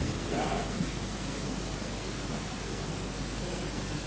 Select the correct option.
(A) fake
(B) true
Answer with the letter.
A